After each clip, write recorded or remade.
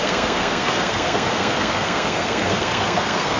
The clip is remade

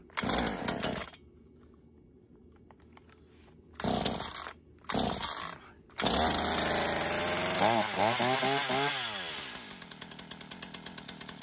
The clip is recorded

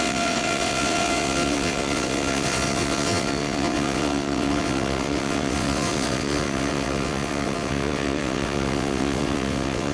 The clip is remade